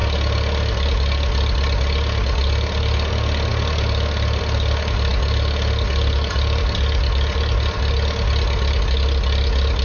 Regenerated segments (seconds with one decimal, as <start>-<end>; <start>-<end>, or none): none